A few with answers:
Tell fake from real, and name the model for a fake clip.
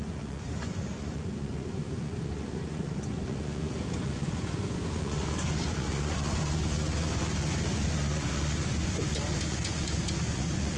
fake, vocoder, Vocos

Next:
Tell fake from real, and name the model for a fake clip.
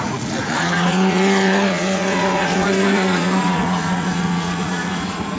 fake, vocoder, Vocos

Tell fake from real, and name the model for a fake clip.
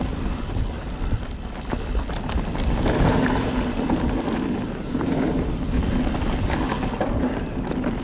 real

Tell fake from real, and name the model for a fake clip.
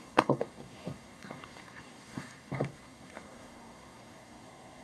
fake, codec, SNAC